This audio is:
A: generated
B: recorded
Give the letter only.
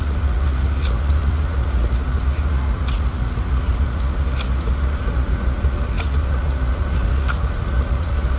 A